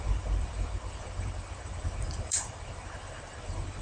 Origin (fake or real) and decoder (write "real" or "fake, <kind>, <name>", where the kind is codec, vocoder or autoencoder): fake, vocoder, BigVGAN v2